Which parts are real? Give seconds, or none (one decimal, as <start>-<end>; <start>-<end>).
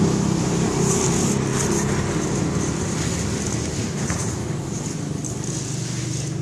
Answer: 0.0-4.4; 5.5-6.4